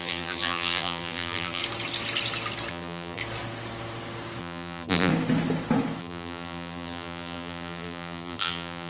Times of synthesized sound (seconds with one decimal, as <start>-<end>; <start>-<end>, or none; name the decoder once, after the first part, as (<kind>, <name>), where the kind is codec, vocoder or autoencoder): 0.0-1.6 (vocoder, BigVGAN v2); 2.7-3.2; 4.4-5.1; 6.0-8.9